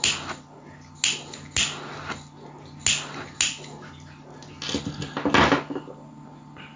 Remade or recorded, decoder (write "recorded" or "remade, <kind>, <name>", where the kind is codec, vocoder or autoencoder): recorded